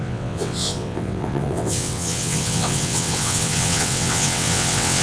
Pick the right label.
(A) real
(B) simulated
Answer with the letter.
B